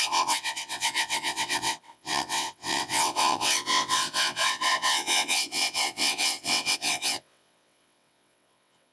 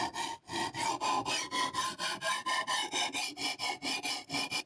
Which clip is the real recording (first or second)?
second